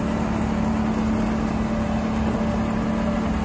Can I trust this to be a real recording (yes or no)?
yes